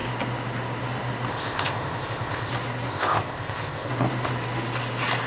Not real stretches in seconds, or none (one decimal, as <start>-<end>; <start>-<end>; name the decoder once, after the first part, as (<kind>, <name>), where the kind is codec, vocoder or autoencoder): 1.3-2.5 (codec, ZipCodec); 2.9-3.9